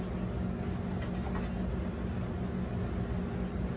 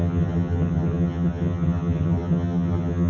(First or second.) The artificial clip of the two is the second